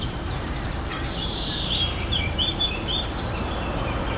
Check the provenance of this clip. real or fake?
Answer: fake